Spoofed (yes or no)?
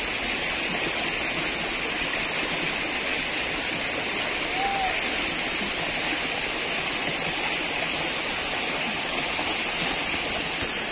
no